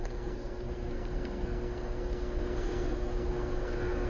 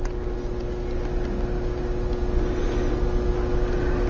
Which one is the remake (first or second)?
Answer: first